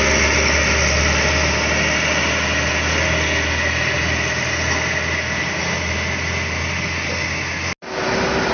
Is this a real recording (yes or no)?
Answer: yes